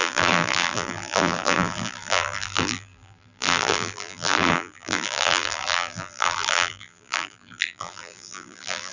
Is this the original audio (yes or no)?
no